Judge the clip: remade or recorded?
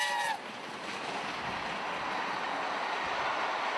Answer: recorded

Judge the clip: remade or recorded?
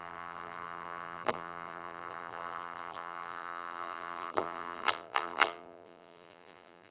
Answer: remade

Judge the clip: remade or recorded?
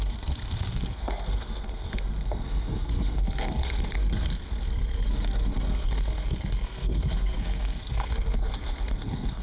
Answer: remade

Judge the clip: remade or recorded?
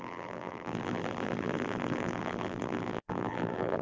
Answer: remade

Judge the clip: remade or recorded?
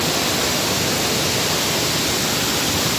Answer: recorded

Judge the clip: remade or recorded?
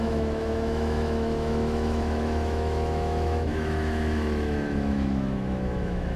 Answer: remade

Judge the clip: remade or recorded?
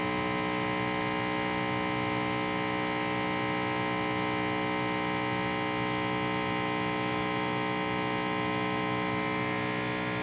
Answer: recorded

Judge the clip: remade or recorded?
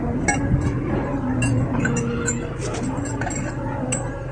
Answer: recorded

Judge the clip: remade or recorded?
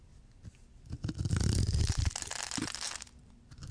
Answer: recorded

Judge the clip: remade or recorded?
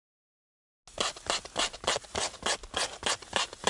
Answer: recorded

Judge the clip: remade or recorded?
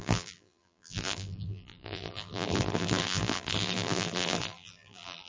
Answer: remade